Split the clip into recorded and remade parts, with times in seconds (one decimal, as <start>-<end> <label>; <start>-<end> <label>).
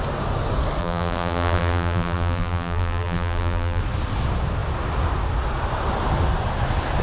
0.0-0.8 recorded; 0.8-3.8 remade; 3.8-7.0 recorded